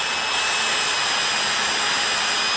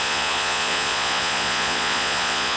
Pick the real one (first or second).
first